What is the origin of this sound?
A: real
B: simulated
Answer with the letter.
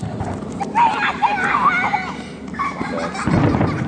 A